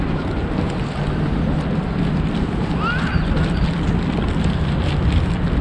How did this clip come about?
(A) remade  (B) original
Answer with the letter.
B